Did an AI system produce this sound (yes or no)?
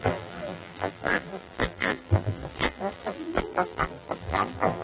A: yes